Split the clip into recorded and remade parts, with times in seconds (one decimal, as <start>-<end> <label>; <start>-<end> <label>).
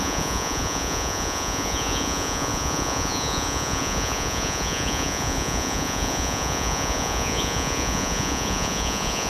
0.0-9.3 remade